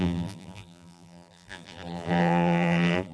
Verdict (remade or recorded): remade